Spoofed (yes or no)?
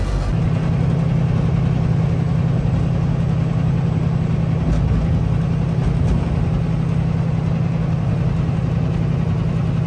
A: no